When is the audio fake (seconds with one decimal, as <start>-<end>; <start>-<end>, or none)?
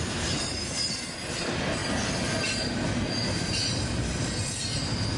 0.0-1.8